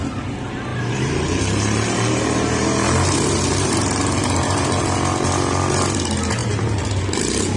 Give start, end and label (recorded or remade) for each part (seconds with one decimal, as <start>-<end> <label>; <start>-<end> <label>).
0.0-0.7 recorded; 0.7-4.8 remade; 4.8-6.4 recorded; 6.4-7.0 remade; 7.0-7.6 recorded